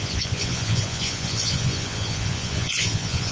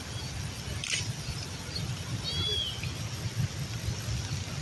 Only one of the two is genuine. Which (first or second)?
second